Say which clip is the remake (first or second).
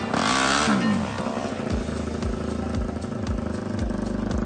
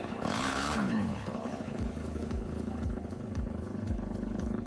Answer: second